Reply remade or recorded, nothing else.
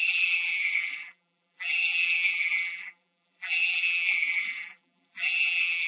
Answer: remade